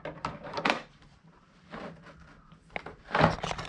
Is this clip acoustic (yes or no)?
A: yes